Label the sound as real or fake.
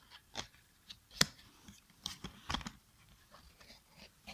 fake